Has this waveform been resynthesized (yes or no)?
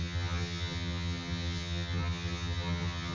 yes